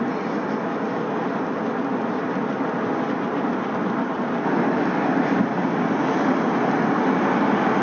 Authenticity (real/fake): real